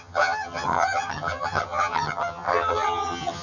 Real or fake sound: fake